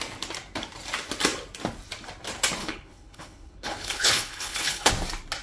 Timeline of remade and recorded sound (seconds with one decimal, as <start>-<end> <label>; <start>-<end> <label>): 0.0-2.6 recorded; 2.6-4.9 remade; 4.9-5.4 recorded